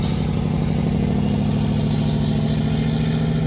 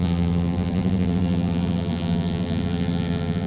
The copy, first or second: second